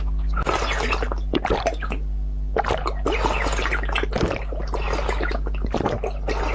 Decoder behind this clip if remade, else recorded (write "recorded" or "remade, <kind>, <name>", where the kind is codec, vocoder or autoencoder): recorded